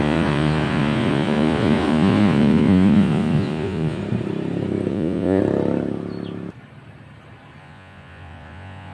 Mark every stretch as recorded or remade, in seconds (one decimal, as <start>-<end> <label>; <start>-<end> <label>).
0.0-4.0 remade; 4.0-4.9 recorded; 4.9-5.4 remade; 5.4-7.6 recorded; 7.6-8.9 remade

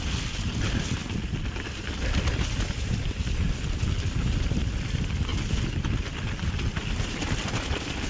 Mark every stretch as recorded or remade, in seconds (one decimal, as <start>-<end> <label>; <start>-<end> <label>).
0.0-8.1 recorded

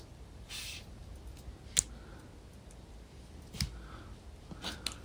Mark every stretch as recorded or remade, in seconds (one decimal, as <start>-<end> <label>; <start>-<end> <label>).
0.0-5.0 recorded